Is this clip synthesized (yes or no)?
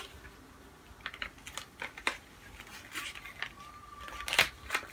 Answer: no